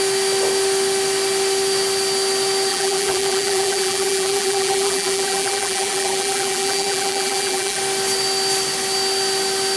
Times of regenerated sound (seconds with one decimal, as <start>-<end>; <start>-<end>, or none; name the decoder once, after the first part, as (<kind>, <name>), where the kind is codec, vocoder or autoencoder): 2.7-7.8 (vocoder, BigVGAN v2)